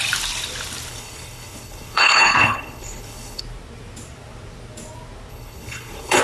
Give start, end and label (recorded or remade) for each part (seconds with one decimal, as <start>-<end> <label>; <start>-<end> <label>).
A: 0.0-0.9 recorded; 0.9-3.4 remade; 3.4-5.3 recorded; 5.3-6.2 remade